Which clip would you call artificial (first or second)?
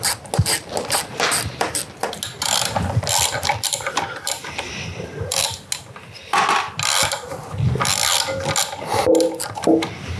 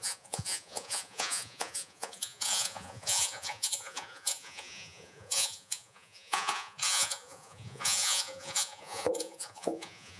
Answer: second